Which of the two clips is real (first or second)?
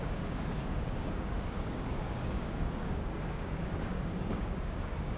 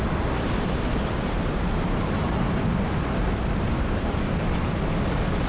second